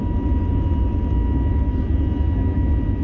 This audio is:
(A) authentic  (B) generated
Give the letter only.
A